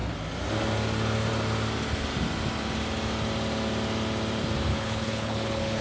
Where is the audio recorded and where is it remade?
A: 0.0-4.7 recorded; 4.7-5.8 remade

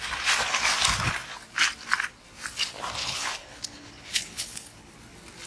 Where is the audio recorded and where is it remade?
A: 0.0-3.0 recorded; 3.0-4.9 remade; 4.9-5.5 recorded

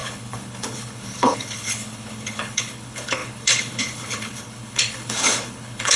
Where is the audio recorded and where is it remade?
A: 0.0-6.0 remade

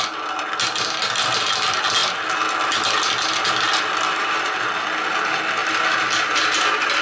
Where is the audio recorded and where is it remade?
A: 0.0-7.0 recorded

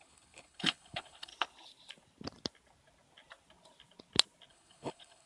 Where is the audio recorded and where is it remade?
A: 0.0-1.3 remade; 1.3-4.5 recorded; 4.5-5.3 remade

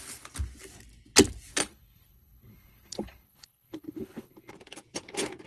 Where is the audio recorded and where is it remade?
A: 0.0-1.5 recorded; 1.5-4.5 remade; 4.5-5.5 recorded

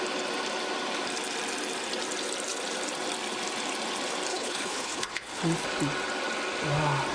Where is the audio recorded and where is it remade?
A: 0.0-4.3 recorded; 4.3-5.4 remade; 5.4-7.1 recorded

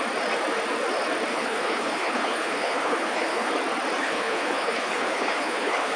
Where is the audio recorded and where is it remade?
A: 0.0-1.3 recorded; 1.3-3.5 remade; 3.5-4.0 recorded; 4.0-6.0 remade